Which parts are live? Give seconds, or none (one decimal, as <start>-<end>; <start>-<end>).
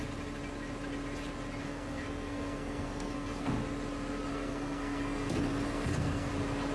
0.0-1.6; 3.5-4.3; 6.3-6.7